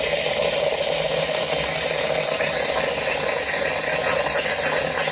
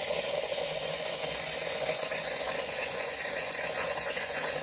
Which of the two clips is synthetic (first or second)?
second